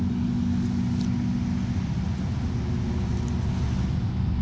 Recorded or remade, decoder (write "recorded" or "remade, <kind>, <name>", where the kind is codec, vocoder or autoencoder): recorded